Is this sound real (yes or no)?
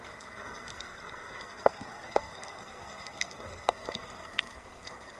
no